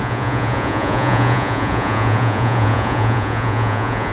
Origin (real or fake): fake